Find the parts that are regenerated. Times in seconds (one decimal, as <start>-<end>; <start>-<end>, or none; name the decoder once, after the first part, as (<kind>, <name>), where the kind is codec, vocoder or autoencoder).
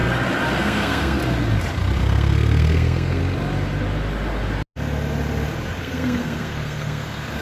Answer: 0.6-1.2 (codec, SNAC); 2.0-3.2; 5.8-7.4